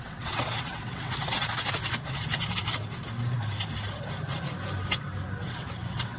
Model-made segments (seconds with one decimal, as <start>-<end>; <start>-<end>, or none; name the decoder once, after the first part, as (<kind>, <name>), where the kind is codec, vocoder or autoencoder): 0.0-1.8 (vocoder, WaveNeXt); 5.5-6.2